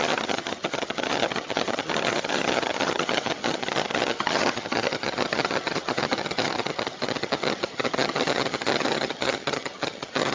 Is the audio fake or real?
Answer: fake